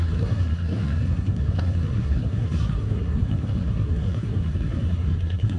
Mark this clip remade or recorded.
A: remade